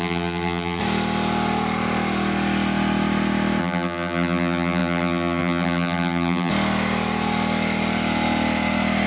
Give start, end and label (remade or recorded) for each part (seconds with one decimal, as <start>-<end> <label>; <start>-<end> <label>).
0.0-0.8 remade; 0.8-3.6 recorded; 3.6-6.5 remade; 6.5-9.1 recorded